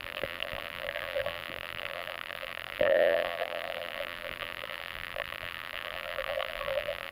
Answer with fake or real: fake